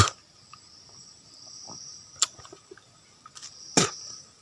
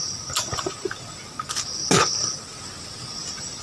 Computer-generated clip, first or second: first